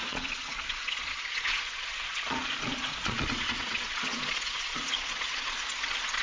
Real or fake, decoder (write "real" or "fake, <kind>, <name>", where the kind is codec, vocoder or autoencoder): fake, vocoder, Vocos